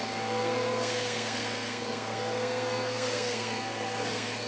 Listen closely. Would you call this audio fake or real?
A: fake